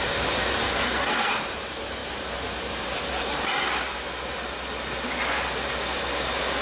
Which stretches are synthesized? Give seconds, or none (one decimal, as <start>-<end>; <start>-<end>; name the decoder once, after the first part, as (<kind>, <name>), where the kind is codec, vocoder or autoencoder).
0.6-1.4 (codec, SNAC)